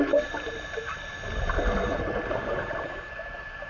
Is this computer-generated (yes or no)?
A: no